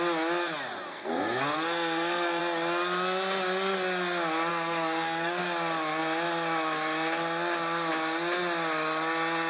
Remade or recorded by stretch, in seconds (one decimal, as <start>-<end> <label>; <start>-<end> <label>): 0.0-0.9 recorded; 0.9-2.4 remade; 2.4-4.5 recorded; 4.5-5.4 remade; 5.4-9.5 recorded